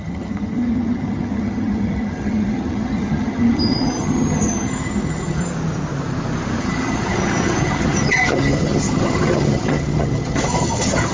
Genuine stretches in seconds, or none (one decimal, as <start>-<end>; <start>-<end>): 5.4-6.6